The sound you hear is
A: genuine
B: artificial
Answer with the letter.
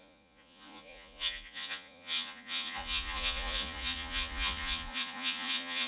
B